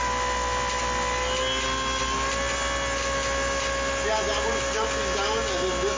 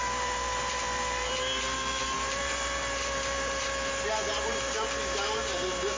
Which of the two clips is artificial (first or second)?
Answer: second